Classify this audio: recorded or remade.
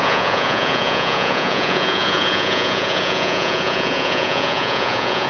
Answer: remade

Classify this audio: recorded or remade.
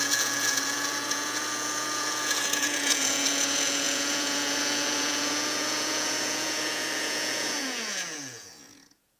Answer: remade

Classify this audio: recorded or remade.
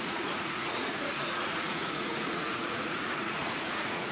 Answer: remade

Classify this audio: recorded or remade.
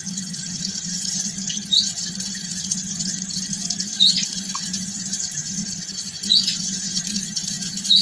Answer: remade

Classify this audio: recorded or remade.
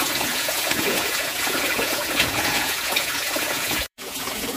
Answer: remade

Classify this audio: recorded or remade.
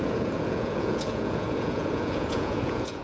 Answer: remade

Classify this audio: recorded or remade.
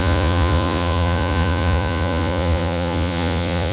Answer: remade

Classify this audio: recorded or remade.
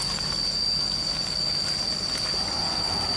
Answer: recorded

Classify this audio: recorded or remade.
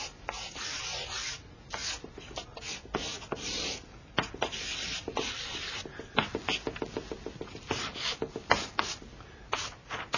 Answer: recorded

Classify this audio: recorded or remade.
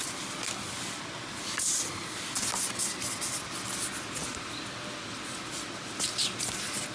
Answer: recorded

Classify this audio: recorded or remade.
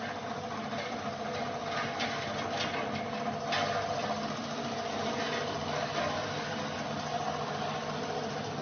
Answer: recorded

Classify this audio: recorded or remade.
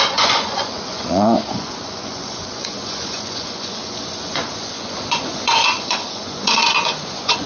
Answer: remade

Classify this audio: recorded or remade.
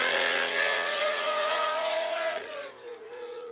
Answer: remade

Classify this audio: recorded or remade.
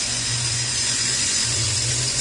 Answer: remade